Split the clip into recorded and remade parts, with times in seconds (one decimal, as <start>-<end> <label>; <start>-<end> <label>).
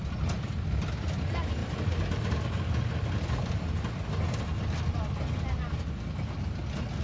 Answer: 0.0-7.0 recorded